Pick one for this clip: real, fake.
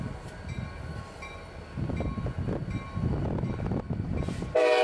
real